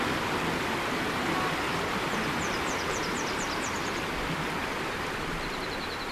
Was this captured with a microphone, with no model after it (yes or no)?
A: no